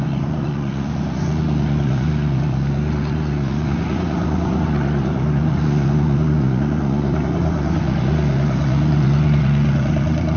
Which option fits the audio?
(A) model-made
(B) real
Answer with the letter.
A